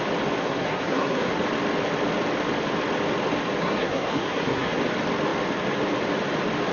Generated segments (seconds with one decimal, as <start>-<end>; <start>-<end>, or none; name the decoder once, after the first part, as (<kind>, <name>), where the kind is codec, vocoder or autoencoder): 0.4-1.3 (codec, SNAC); 3.6-4.8